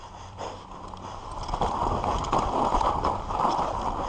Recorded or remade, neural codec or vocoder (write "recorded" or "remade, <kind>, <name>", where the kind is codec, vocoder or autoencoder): remade, vocoder, BigVGAN v2